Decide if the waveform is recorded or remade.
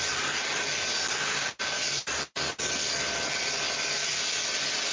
recorded